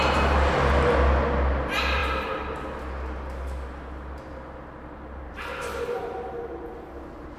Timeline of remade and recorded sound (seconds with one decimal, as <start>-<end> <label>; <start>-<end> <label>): 0.0-7.4 recorded